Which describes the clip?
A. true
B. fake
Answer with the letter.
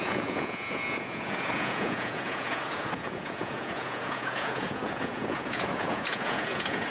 B